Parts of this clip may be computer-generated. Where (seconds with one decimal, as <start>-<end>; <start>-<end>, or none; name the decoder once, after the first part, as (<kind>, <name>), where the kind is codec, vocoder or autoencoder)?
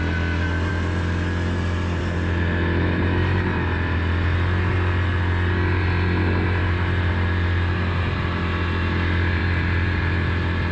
none